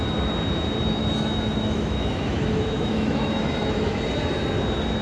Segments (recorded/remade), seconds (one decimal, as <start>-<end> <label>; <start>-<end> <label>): 0.0-1.0 recorded; 1.0-4.0 remade; 4.0-5.0 recorded